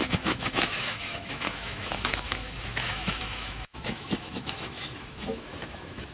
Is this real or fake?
fake